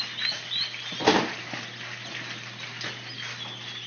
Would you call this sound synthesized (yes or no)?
no